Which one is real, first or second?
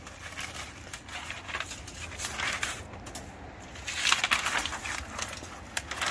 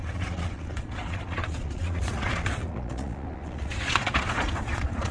first